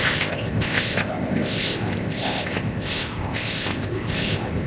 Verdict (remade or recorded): remade